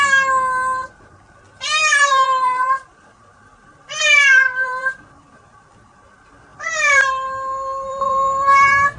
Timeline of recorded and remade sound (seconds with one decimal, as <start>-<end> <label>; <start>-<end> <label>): 0.0-1.9 recorded; 1.9-5.8 remade; 5.8-6.5 recorded; 6.5-7.0 remade; 7.0-7.9 recorded; 7.9-9.0 remade